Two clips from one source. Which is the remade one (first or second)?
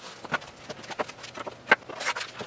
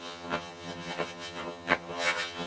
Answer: second